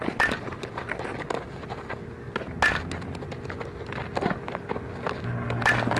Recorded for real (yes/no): yes